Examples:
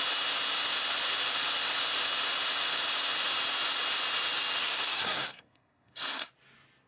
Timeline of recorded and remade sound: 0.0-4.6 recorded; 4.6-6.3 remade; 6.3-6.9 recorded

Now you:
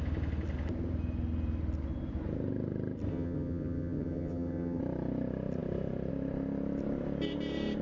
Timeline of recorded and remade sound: 0.0-3.1 recorded; 3.1-4.8 remade; 4.8-7.8 recorded

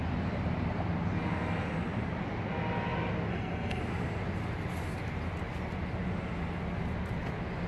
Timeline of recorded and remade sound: 0.0-3.3 recorded; 3.3-3.8 remade; 3.8-7.7 recorded

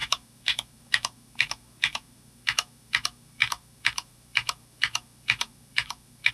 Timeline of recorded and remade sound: 0.0-6.3 remade